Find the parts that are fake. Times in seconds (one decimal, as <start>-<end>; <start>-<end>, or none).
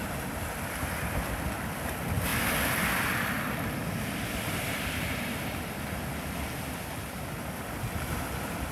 none